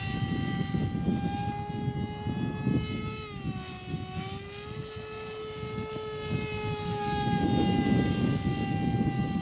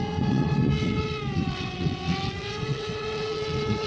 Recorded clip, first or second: first